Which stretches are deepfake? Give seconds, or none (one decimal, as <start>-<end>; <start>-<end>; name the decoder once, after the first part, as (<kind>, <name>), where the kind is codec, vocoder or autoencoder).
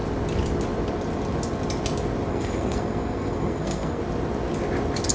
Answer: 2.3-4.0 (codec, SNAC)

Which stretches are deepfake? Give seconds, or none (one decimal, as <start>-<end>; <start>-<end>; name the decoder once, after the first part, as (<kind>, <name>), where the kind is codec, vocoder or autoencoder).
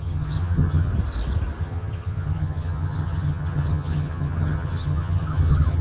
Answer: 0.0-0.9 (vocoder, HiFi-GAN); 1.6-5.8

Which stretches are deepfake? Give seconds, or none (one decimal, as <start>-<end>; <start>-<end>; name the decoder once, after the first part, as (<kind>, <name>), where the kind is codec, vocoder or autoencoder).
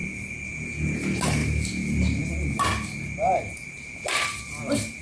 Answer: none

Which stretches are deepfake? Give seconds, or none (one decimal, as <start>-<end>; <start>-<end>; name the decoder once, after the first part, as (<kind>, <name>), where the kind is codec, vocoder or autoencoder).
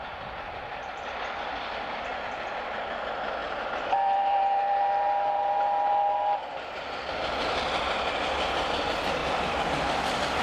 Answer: none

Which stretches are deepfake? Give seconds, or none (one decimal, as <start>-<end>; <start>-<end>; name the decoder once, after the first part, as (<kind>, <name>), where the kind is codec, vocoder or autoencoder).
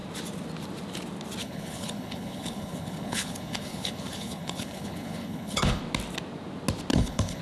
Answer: 1.4-5.8 (codec, HILCodec); 6.9-7.4